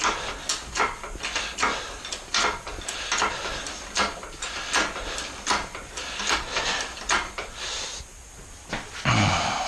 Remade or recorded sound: recorded